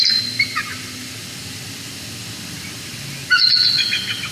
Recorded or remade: recorded